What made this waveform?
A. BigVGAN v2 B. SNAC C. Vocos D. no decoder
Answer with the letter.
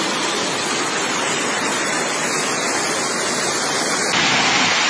D